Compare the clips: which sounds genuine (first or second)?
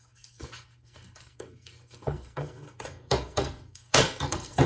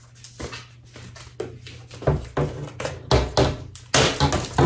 second